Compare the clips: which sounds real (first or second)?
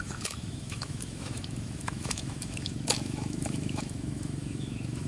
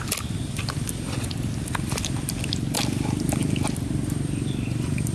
second